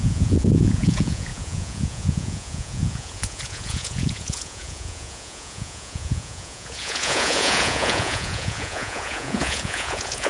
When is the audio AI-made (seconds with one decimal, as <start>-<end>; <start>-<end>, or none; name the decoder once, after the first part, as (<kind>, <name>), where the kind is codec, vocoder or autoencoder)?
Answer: 0.0-10.3 (vocoder, Vocos)